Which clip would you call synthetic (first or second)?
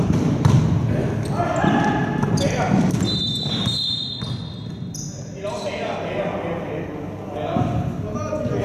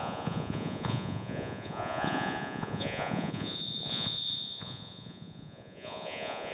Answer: second